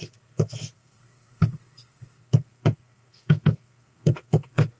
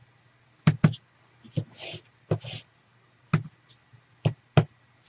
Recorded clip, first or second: second